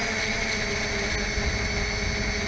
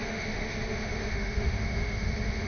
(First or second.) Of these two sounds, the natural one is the first